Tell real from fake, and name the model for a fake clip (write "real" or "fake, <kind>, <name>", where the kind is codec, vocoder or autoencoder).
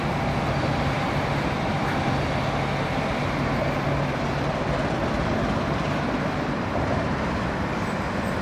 real